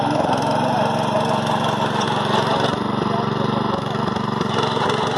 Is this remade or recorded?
recorded